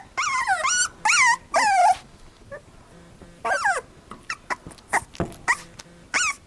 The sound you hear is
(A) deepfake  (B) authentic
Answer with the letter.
B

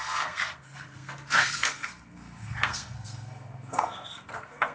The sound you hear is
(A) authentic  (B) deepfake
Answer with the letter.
B